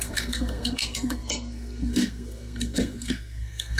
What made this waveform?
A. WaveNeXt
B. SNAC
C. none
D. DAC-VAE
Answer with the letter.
B